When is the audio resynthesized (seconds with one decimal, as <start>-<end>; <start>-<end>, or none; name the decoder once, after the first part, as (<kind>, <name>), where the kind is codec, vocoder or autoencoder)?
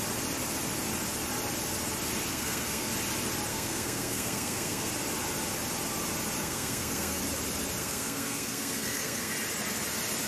2.3-2.9 (codec, SNAC); 3.5-4.9; 6.4-7.2; 7.8-9.3